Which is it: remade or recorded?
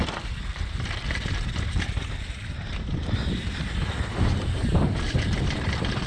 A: remade